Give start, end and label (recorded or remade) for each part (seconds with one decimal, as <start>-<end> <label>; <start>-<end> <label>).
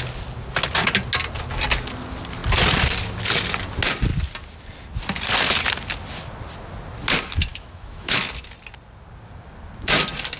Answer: 0.0-7.5 recorded; 7.5-8.2 remade; 8.2-10.4 recorded